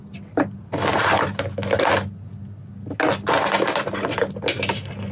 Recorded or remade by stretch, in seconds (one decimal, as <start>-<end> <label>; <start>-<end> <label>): 0.0-5.1 recorded